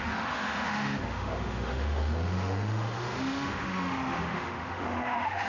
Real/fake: fake